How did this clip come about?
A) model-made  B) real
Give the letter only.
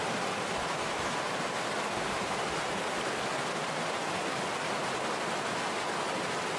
B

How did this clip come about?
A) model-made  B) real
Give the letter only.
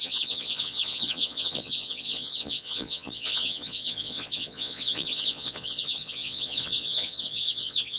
A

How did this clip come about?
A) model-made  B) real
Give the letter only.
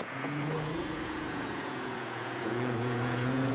A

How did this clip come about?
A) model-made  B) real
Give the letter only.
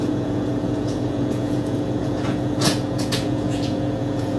A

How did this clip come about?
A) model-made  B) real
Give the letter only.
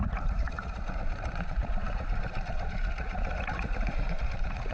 A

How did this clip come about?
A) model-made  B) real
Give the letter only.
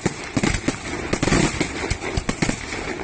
B